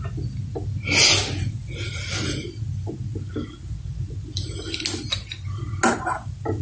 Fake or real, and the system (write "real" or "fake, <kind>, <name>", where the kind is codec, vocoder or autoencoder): real